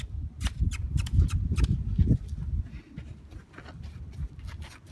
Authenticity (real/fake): fake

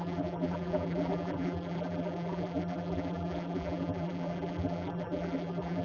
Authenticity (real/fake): fake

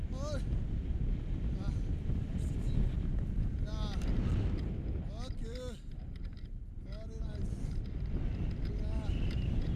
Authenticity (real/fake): real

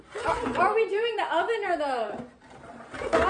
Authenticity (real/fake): fake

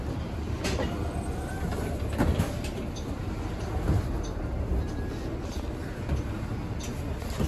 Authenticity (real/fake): real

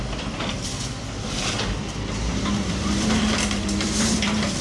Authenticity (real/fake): fake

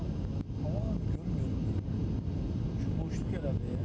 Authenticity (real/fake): real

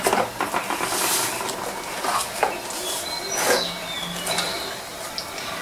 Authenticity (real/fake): real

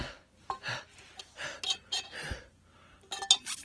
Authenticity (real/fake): real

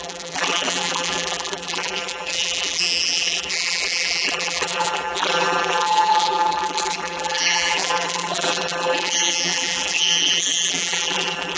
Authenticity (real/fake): fake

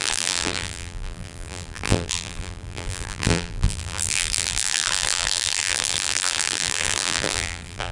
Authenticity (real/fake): fake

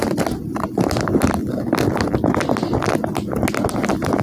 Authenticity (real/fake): real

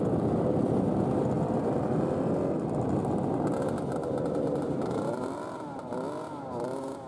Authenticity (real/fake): real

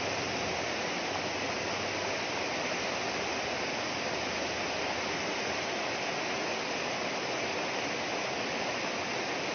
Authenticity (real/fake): real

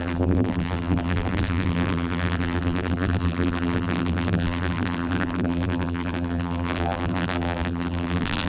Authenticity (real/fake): fake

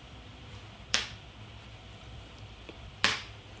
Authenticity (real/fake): fake